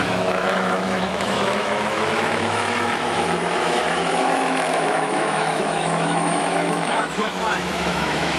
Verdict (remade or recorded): remade